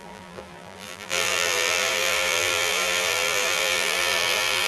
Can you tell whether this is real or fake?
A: fake